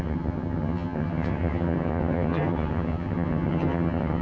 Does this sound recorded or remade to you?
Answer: remade